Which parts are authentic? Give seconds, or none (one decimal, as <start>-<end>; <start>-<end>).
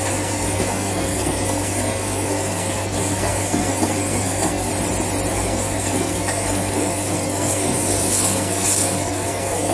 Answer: 4.7-5.3